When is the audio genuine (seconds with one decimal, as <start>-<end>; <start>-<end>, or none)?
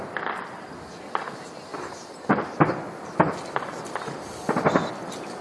0.0-1.7; 4.9-5.4